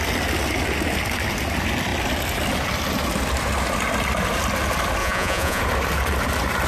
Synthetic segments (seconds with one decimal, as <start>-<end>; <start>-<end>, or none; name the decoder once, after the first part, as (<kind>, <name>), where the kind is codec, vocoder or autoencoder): 5.0-5.6 (vocoder, Vocos)